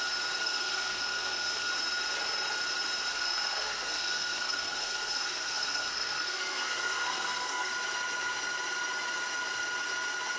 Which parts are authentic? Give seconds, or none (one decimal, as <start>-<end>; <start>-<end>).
0.0-0.4; 1.7-3.1; 7.7-10.4